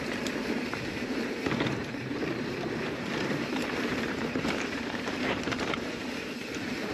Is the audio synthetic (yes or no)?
yes